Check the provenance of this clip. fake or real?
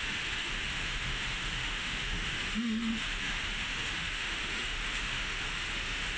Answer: fake